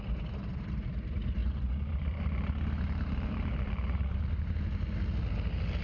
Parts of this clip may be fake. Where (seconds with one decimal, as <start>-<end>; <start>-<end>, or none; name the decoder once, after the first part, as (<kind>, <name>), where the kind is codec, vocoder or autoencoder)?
1.4-4.9 (vocoder, BigVGAN v2)

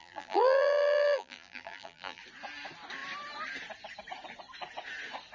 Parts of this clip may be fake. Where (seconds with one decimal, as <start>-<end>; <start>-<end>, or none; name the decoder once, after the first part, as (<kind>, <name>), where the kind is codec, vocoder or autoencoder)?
0.0-2.2 (vocoder, BigVGAN v2)

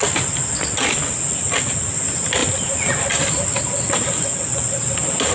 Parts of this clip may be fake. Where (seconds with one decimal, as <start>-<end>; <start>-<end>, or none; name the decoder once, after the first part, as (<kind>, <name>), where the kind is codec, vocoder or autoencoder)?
none

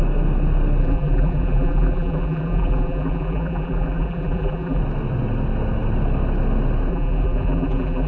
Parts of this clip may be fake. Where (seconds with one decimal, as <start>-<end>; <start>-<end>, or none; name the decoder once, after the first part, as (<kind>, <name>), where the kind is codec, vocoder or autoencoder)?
0.8-4.8 (vocoder, BigVGAN v2); 6.9-8.1

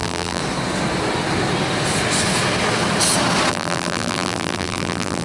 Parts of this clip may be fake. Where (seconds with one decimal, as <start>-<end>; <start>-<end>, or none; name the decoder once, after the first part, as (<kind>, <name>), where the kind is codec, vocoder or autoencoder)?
0.0-0.4 (vocoder, BigVGAN v2); 3.5-5.2